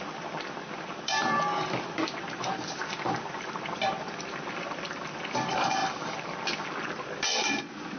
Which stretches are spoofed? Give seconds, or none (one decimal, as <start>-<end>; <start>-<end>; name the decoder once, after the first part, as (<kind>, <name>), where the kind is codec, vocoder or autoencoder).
0.0-5.8 (vocoder, BigVGAN v2); 7.6-8.0

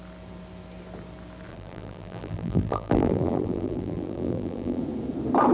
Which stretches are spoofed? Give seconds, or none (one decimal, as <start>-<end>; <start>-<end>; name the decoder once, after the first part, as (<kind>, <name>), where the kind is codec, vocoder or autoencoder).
1.5-4.8 (vocoder, BigVGAN v2)

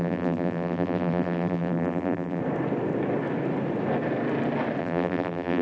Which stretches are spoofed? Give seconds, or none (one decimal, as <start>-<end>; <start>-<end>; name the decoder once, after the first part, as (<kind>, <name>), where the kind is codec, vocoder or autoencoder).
0.0-2.4 (vocoder, BigVGAN v2); 4.8-5.6

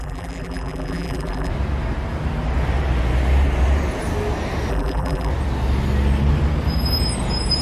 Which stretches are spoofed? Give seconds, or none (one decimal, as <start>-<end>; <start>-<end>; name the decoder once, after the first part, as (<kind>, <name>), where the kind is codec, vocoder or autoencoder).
0.0-1.5 (vocoder, BigVGAN v2); 4.7-5.3

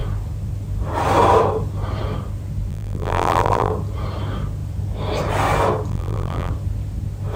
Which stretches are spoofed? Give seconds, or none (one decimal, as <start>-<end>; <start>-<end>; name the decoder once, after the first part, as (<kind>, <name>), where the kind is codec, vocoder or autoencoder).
2.7-3.7 (vocoder, BigVGAN v2); 5.9-6.5

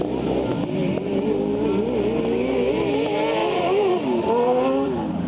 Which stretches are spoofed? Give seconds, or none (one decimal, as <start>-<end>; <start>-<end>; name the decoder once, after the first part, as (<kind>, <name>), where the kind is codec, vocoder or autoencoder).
3.4-3.9 (vocoder, BigVGAN v2)

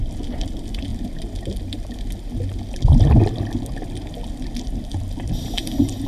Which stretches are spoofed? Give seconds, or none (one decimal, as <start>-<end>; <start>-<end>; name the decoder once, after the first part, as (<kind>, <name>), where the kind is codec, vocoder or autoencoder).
0.0-0.9 (vocoder, BigVGAN v2); 4.6-6.1